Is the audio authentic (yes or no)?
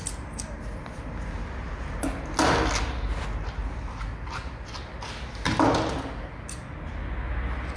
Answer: yes